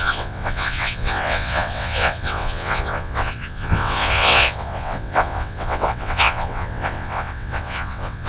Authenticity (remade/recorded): remade